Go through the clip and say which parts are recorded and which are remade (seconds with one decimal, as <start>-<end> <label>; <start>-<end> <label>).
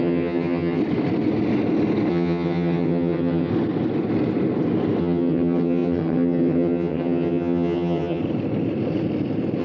0.0-0.8 remade; 0.8-2.1 recorded; 2.1-3.5 remade; 3.5-5.0 recorded; 5.0-8.2 remade; 8.2-9.6 recorded